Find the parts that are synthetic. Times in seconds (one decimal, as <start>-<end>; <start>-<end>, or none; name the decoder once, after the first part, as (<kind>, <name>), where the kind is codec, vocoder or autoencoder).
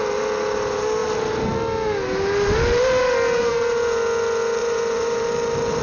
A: 4.6-5.8 (vocoder, BigVGAN v2)